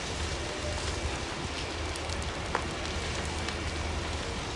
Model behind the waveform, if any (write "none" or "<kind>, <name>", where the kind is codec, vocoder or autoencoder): none